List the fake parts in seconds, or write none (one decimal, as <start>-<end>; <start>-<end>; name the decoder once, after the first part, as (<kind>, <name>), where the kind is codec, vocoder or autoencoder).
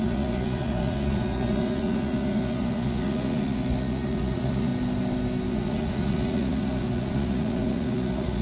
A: 0.0-4.7 (vocoder, Vocos); 5.5-8.4